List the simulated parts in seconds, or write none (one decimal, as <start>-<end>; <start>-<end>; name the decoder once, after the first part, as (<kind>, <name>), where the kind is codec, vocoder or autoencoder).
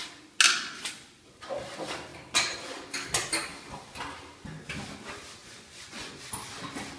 5.4-6.2 (vocoder, Vocos)